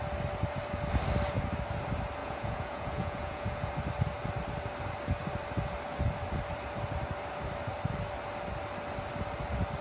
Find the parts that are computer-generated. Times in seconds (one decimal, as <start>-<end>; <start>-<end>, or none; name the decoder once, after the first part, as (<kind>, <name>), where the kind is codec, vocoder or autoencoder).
2.2-3.7 (vocoder, Vocos)